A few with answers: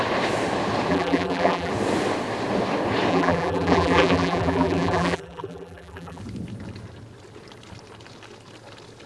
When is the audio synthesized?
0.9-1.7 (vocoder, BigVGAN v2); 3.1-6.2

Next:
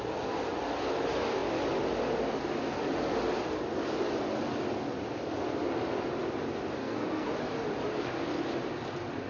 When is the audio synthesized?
6.8-7.3 (codec, SNAC)

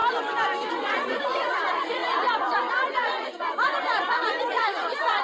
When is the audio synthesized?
0.7-5.2 (vocoder, Vocos)

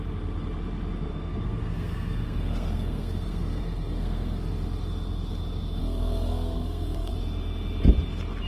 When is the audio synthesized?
1.1-4.5 (codec, SNAC); 5.8-7.1

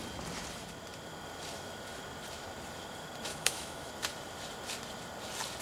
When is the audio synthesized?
3.3-3.9 (autoencoder, DAC-VAE)